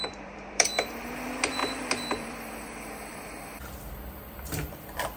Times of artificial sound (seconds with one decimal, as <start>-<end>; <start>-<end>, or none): 0.0-5.2